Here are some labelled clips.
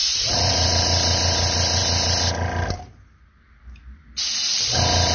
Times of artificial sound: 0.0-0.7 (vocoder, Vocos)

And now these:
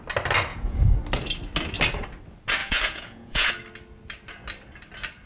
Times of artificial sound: 0.5-1.0 (vocoder, Vocos); 2.6-3.5